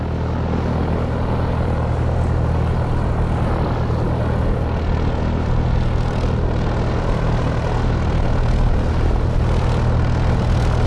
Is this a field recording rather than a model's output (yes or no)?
yes